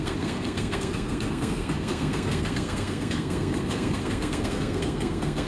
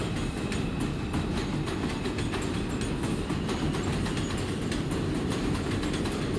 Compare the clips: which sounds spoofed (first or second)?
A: first